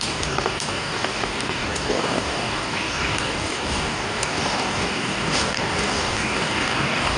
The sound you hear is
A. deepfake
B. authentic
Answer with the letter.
A